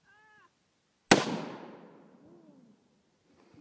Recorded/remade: recorded